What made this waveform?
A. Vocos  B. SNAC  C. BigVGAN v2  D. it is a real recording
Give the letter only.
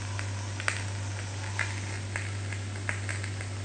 D